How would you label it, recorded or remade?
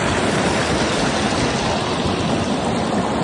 recorded